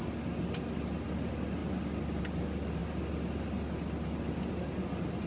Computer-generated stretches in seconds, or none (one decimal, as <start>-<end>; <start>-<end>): none